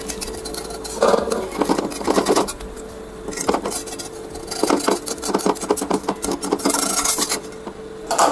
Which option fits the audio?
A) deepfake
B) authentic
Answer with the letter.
B